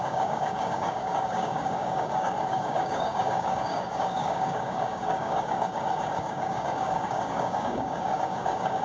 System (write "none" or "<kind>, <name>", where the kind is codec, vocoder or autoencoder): codec, DAC